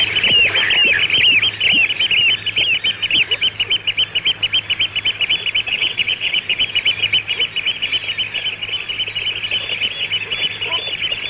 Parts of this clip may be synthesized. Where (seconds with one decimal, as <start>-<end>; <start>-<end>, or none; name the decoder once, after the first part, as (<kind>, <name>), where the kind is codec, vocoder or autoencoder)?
5.7-6.6 (vocoder, WaveNeXt)